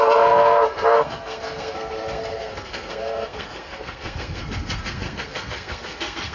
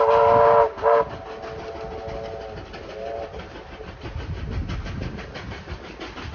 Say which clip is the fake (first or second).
first